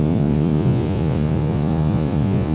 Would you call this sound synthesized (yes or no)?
yes